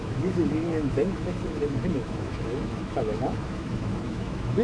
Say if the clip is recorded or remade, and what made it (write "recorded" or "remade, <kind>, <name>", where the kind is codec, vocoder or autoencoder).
remade, autoencoder, DAC-VAE